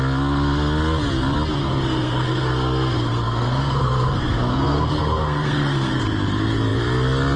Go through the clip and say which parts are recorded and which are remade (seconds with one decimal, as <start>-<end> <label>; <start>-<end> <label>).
0.0-1.6 recorded; 1.6-6.0 remade; 6.0-7.4 recorded